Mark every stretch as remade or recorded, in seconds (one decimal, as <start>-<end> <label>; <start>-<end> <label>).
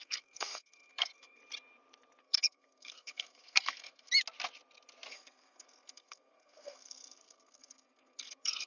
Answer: 0.0-1.4 remade; 1.4-2.2 recorded; 2.2-4.1 remade; 4.1-5.1 recorded; 5.1-8.7 remade